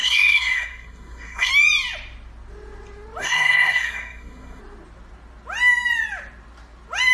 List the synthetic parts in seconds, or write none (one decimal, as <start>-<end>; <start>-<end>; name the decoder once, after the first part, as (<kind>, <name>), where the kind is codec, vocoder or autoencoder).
0.0-1.5 (codec, SNAC); 3.2-4.6